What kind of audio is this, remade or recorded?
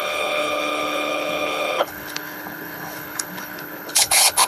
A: remade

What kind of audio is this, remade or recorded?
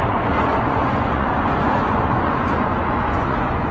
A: remade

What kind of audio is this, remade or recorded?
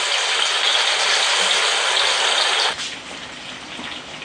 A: recorded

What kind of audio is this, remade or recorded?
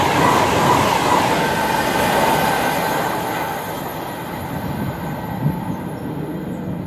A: recorded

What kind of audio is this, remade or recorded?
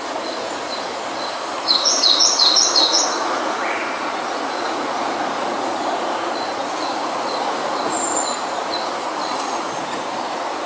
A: remade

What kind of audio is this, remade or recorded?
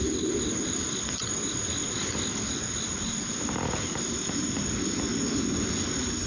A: recorded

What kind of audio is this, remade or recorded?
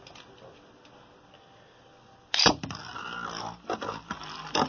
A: recorded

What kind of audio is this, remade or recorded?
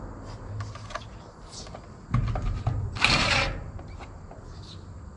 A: recorded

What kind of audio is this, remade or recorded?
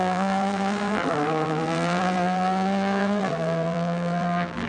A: remade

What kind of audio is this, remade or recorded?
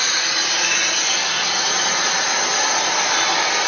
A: recorded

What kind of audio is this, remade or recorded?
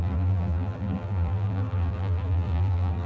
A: remade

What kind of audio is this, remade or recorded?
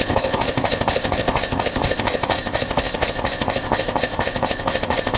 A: remade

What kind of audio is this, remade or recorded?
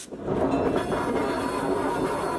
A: recorded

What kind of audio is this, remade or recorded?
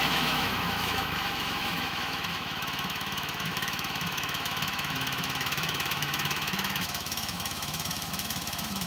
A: remade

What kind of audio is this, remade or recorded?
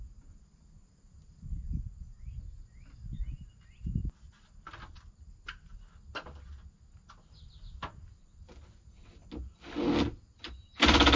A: recorded